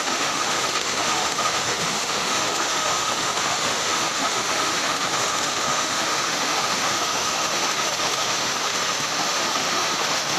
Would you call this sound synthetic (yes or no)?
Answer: yes